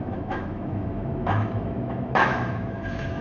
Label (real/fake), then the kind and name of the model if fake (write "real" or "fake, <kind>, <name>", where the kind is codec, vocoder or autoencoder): fake, autoencoder, DAC-VAE